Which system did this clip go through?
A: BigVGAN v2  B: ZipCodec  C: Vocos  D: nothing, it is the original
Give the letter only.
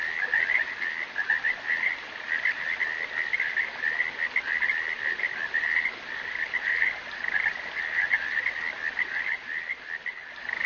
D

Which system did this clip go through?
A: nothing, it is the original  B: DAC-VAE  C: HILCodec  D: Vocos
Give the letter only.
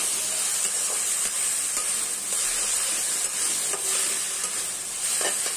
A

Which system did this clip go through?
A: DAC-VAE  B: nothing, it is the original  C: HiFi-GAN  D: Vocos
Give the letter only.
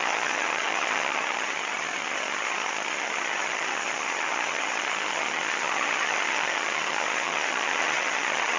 C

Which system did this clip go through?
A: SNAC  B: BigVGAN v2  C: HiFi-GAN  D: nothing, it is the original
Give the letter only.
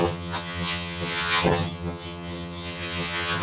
C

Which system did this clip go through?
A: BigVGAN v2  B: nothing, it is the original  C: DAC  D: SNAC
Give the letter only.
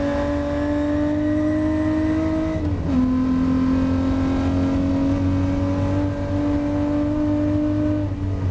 B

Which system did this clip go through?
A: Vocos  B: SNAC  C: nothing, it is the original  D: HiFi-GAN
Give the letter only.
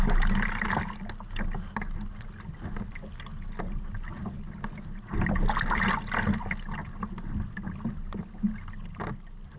C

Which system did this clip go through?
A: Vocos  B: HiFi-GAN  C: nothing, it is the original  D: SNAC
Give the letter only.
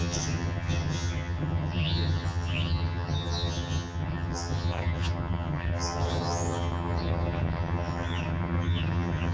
B